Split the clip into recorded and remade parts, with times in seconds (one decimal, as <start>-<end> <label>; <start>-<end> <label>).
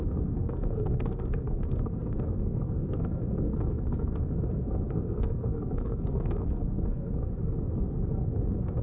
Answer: 0.0-8.8 remade